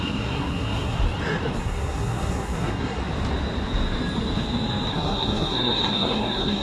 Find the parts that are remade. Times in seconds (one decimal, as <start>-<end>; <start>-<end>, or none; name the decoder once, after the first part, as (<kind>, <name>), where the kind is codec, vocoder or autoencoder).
0.0-1.0 (codec, SNAC); 1.6-3.0; 4.9-6.6